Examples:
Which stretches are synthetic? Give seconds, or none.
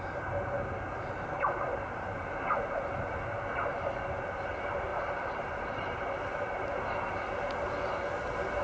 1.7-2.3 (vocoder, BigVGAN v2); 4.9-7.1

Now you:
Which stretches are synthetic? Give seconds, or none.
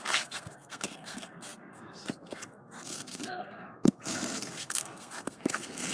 0.0-5.9 (codec, SNAC)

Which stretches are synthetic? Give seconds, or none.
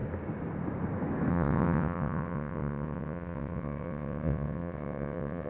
1.3-5.5 (vocoder, WaveNeXt)